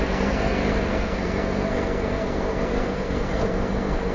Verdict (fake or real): fake